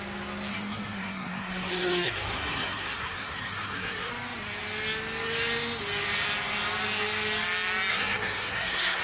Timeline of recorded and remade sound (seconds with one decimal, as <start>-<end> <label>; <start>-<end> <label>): 0.0-0.5 recorded; 0.5-4.1 remade; 4.1-7.9 recorded; 7.9-9.0 remade